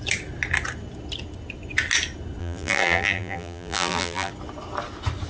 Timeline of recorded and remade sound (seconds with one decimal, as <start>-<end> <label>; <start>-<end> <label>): 0.0-2.4 recorded; 2.4-4.3 remade; 4.3-5.3 recorded